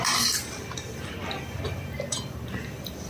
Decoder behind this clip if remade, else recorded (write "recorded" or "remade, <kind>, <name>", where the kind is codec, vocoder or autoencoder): remade, vocoder, BigVGAN v2